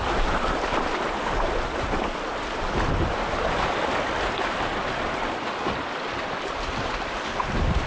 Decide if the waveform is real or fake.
real